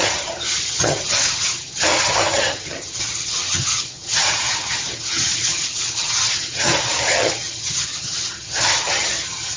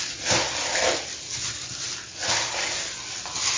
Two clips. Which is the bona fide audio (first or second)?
second